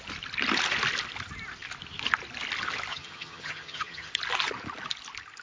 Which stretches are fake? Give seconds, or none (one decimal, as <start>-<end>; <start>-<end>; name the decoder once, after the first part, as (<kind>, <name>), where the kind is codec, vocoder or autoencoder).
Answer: 2.9-4.1 (vocoder, HiFi-GAN)